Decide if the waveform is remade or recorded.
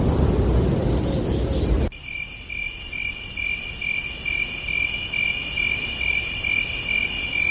recorded